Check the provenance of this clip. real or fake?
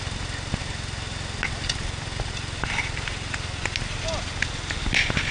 real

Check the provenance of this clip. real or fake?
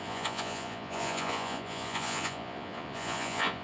fake